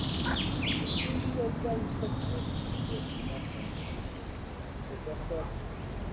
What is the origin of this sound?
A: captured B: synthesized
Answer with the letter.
A